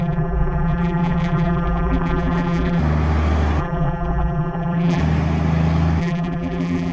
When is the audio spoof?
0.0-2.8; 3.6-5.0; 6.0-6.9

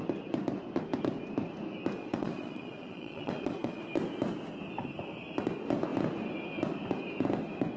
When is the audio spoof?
2.0-3.8

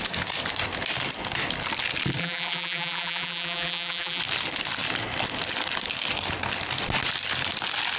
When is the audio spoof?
2.2-4.2